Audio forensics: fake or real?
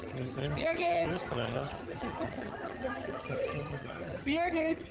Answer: fake